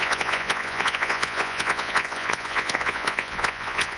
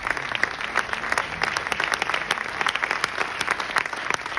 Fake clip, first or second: first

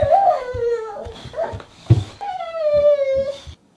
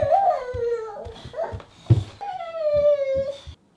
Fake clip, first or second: first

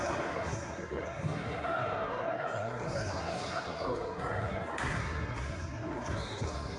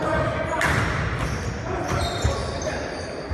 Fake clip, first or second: first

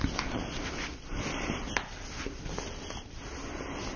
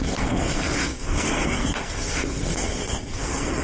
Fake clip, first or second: second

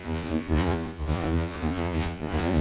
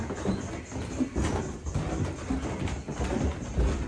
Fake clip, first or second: first